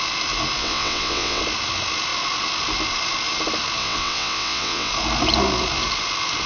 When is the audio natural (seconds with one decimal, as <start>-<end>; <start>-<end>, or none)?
0.0-0.6; 1.4-3.8; 4.9-6.5